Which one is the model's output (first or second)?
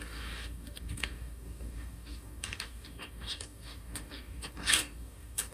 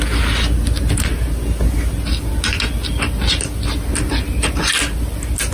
first